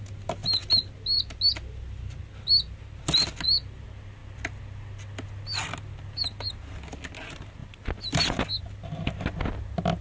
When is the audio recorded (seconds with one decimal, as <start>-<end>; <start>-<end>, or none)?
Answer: 0.0-10.0